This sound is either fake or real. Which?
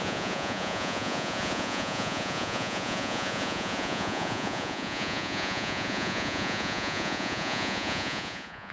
fake